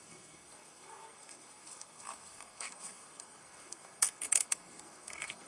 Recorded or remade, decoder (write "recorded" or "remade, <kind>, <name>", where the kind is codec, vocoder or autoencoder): remade, codec, SNAC